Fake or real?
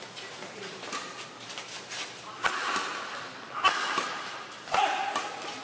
real